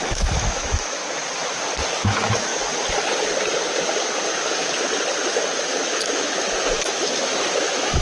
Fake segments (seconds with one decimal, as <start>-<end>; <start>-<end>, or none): 0.0-1.0; 1.9-2.5; 5.6-8.0